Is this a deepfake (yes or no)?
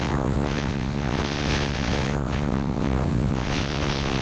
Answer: yes